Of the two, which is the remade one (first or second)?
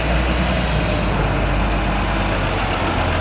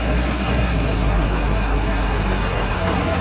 second